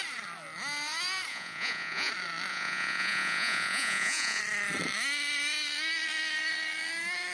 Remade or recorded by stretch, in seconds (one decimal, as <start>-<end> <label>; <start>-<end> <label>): 0.0-1.3 recorded; 1.3-2.1 remade; 2.1-2.5 recorded; 2.5-4.4 remade; 4.4-7.3 recorded